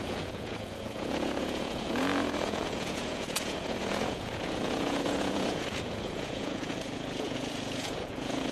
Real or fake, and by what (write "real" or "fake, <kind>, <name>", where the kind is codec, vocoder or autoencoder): fake, vocoder, Vocos